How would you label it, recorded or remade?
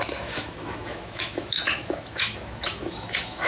remade